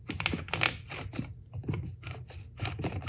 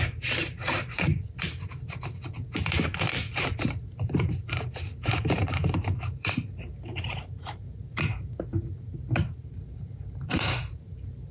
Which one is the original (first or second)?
first